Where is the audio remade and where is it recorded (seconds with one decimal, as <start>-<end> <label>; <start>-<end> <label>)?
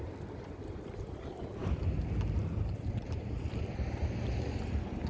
0.0-5.1 recorded